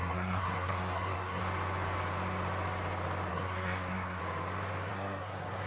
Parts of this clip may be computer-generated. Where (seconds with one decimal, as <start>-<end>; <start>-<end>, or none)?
0.0-1.4; 3.3-4.2; 4.9-5.7